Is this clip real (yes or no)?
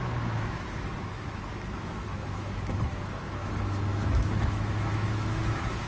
no